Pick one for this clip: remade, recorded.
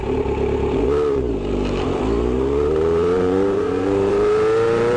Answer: remade